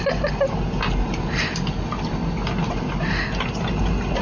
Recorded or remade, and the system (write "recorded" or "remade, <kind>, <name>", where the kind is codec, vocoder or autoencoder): recorded